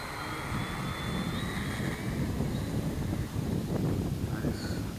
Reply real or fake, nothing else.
real